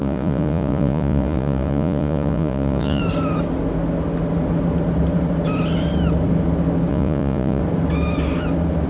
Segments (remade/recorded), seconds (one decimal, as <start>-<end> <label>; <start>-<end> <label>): 0.0-3.0 remade; 3.0-6.9 recorded; 6.9-7.6 remade; 7.6-8.9 recorded